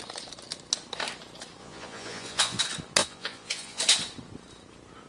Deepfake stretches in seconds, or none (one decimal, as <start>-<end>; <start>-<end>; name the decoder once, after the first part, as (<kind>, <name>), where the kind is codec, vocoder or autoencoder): 1.6-2.6 (vocoder, Vocos); 3.0-3.8